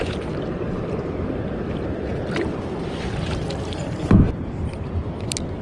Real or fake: real